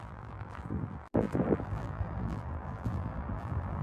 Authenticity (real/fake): fake